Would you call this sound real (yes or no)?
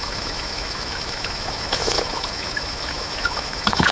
no